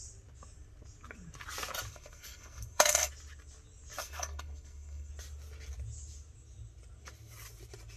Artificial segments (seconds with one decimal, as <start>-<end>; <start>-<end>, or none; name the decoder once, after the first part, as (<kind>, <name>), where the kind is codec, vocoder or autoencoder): 1.9-3.1 (codec, SNAC); 4.0-5.1